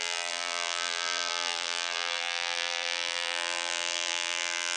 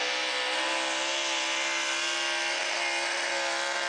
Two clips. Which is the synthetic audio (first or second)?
first